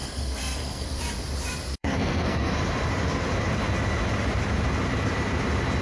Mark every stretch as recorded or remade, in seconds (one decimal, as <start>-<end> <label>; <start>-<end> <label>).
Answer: 0.0-1.0 remade; 1.0-1.7 recorded; 1.7-2.5 remade; 2.5-5.8 recorded